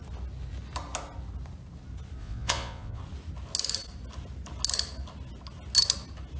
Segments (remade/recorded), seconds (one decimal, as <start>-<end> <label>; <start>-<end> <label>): 0.0-2.2 recorded; 2.2-3.0 remade; 3.0-6.4 recorded